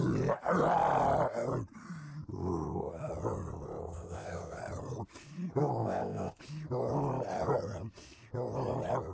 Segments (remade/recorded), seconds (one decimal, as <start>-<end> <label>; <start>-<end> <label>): 0.0-2.3 recorded; 2.3-2.9 remade; 2.9-3.8 recorded; 3.8-4.6 remade; 4.6-5.6 recorded; 5.6-6.4 remade; 6.4-9.1 recorded

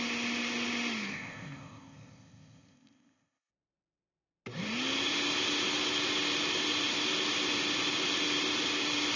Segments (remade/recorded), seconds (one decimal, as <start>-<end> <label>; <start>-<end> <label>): 0.0-1.1 recorded; 1.1-3.5 remade; 3.5-9.2 recorded

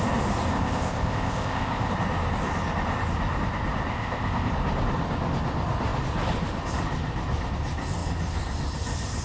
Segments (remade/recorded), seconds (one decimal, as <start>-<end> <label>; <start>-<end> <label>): 0.0-0.5 recorded; 0.5-1.9 remade; 1.9-3.9 recorded; 3.9-4.5 remade; 4.5-9.2 recorded

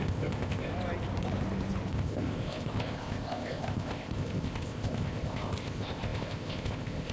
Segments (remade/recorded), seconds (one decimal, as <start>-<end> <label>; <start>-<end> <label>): 0.0-0.7 remade; 0.7-1.9 recorded; 1.9-7.1 remade